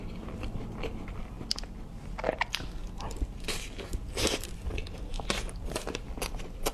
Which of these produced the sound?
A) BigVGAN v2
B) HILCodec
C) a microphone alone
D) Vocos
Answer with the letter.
C